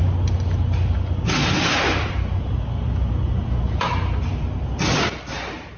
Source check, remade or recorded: recorded